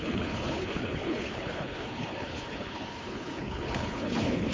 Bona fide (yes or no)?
no